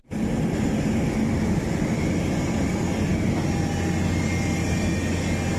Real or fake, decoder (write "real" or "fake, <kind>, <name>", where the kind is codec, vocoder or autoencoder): real